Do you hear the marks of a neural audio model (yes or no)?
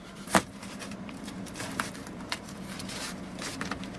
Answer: yes